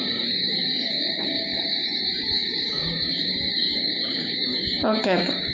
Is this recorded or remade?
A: remade